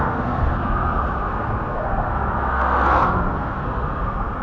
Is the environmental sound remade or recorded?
remade